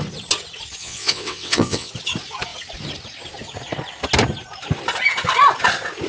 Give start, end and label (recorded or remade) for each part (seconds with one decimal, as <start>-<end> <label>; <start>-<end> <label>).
0.0-0.8 recorded; 0.8-1.9 remade; 1.9-6.1 recorded